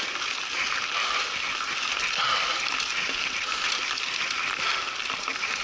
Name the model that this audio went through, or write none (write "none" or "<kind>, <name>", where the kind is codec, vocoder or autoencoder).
none